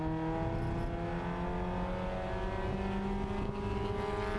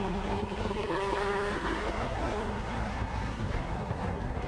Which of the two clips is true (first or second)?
first